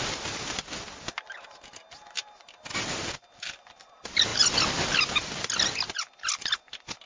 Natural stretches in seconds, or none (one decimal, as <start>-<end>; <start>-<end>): 0.0-7.1